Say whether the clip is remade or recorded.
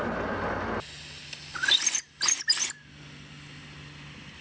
recorded